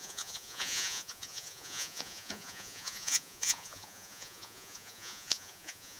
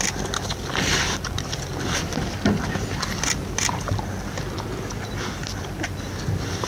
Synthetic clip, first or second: first